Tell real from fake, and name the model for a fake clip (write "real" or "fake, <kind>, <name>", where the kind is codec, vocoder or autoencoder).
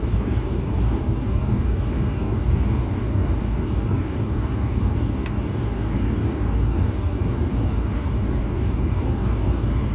fake, codec, DAC